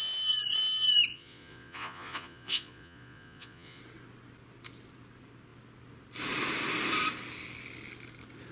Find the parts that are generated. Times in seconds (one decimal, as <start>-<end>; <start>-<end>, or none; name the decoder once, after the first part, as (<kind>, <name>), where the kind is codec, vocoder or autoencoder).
1.1-3.8 (vocoder, Vocos)